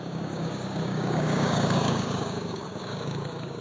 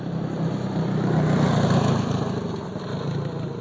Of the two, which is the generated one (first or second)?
first